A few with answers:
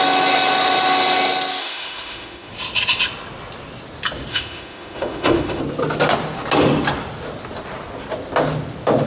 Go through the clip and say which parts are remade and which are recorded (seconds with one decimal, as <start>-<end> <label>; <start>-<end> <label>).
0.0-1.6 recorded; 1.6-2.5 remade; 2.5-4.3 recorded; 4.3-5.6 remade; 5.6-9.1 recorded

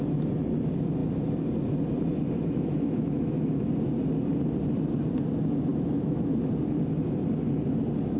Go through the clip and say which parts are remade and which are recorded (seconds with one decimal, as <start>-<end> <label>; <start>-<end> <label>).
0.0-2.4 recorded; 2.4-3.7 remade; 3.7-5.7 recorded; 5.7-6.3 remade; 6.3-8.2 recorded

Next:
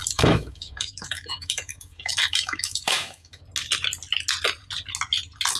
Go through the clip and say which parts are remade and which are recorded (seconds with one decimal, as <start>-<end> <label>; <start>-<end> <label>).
0.0-3.4 remade; 3.4-5.6 recorded

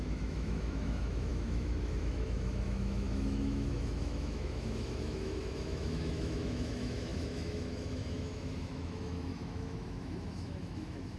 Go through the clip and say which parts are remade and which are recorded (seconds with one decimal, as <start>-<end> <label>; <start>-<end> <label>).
0.0-11.2 remade